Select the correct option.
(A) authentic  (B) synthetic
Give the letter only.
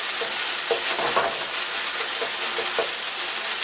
A